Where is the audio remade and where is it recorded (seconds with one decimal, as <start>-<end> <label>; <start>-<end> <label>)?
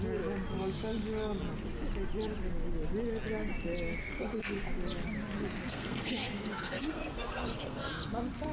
0.0-4.0 recorded; 4.0-4.7 remade; 4.7-5.7 recorded; 5.7-7.9 remade; 7.9-8.5 recorded